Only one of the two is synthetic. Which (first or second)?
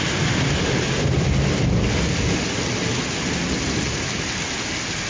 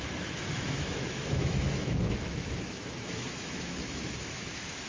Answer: second